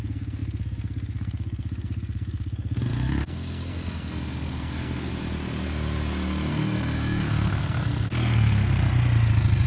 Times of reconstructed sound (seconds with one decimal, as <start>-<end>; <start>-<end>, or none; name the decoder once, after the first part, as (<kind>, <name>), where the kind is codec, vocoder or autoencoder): 0.0-5.1 (codec, SNAC); 6.5-8.8